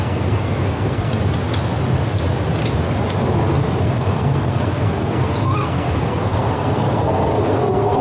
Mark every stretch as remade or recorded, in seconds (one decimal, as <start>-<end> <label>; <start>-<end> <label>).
0.0-1.1 remade; 1.1-3.8 recorded; 3.8-8.0 remade